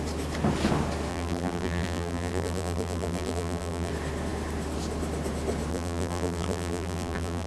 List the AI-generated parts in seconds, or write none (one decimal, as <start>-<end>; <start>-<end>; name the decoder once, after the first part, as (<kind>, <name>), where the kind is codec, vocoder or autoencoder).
1.1-3.9 (vocoder, BigVGAN v2); 5.7-7.5

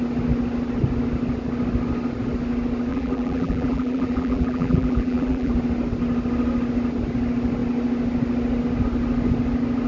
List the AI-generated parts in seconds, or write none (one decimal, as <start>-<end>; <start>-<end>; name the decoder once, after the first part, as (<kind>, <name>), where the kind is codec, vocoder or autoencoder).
2.9-5.5 (vocoder, BigVGAN v2)